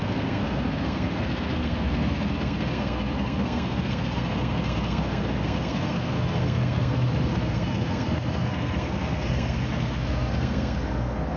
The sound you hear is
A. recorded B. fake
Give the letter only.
B